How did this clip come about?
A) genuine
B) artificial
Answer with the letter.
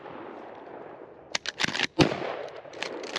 A